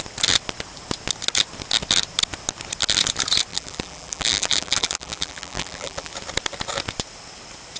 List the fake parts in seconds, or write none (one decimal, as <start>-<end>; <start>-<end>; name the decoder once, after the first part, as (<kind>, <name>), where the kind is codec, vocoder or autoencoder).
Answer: 3.5-6.1 (vocoder, BigVGAN v2)